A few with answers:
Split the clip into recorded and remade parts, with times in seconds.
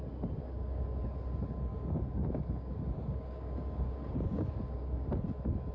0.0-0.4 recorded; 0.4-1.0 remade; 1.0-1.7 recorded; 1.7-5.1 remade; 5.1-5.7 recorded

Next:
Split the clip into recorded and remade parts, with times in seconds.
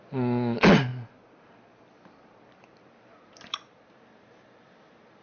0.0-5.2 recorded